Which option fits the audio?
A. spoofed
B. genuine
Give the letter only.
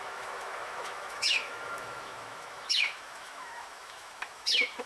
A